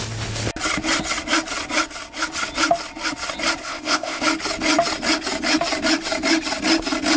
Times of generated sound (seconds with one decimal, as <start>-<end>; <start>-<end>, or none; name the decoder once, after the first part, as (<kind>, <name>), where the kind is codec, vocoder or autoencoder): 3.6-4.2 (codec, ZipCodec)